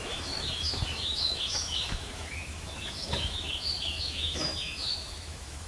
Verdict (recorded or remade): remade